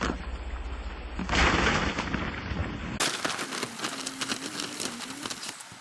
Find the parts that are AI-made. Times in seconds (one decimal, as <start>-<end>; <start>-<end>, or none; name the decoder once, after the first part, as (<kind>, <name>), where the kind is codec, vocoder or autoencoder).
none